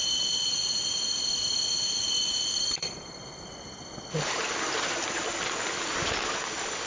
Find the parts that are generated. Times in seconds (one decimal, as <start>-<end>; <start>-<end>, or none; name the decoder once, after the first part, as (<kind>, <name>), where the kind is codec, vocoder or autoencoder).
none